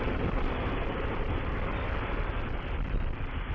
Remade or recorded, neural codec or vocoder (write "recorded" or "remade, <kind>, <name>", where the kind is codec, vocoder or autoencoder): recorded